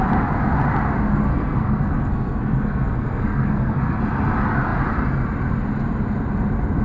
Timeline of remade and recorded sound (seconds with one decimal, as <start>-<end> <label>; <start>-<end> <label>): 0.0-1.3 recorded; 1.3-4.0 remade; 4.0-6.8 recorded